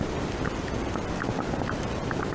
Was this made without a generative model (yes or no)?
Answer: yes